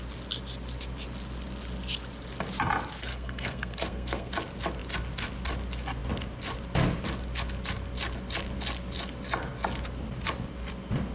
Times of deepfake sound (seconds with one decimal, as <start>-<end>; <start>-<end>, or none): 3.1-4.3

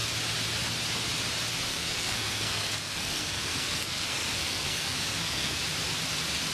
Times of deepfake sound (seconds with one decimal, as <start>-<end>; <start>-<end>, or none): 1.7-5.6

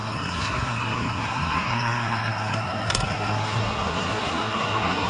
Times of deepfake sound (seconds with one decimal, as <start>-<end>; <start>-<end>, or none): 0.0-5.1

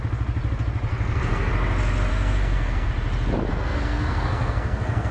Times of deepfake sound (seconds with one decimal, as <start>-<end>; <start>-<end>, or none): 0.9-1.5; 2.1-2.9; 3.5-5.1

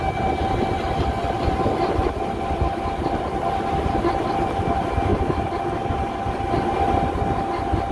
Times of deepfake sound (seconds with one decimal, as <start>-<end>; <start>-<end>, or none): none

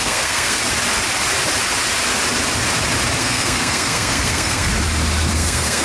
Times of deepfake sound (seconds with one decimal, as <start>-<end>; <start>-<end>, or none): 0.0-0.6; 3.2-4.7; 5.3-5.8